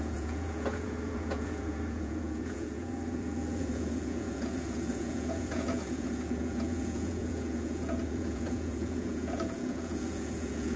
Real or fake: fake